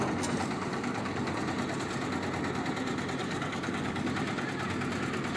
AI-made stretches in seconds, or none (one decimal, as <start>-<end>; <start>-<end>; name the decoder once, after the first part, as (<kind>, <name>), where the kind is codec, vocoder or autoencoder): 0.7-1.3 (codec, DAC); 3.2-4.1

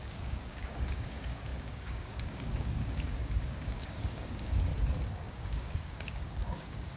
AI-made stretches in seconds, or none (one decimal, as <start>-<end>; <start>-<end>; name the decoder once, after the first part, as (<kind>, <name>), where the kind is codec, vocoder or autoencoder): 0.0-4.7 (codec, DAC); 5.3-7.0

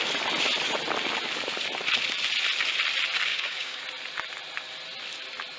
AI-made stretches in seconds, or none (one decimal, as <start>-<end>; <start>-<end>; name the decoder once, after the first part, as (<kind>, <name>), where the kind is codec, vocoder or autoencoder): 3.3-3.8 (codec, DAC)

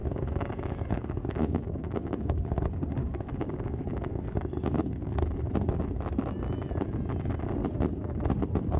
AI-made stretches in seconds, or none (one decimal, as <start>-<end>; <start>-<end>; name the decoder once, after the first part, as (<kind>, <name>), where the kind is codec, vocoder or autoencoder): 0.0-2.6 (codec, DAC); 3.0-5.2

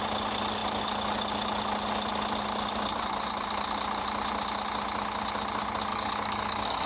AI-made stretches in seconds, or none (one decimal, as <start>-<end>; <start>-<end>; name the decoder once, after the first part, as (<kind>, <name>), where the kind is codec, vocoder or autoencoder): 5.9-6.9 (codec, DAC)

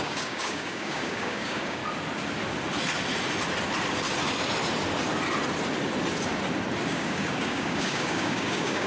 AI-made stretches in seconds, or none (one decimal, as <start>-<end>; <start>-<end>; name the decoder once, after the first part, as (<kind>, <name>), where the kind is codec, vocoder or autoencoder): 0.0-1.8 (codec, DAC); 6.9-8.9